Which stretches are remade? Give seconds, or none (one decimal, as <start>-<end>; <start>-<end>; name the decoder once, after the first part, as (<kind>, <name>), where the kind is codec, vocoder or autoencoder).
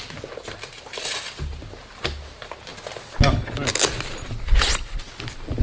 none